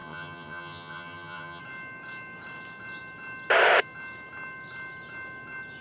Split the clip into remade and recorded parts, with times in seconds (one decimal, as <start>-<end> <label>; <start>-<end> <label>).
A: 0.0-1.6 remade; 1.6-5.8 recorded